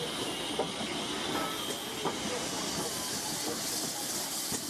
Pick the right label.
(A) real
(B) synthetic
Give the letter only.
A